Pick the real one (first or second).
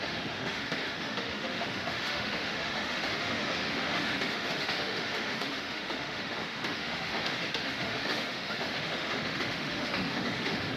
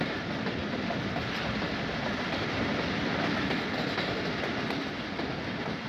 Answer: second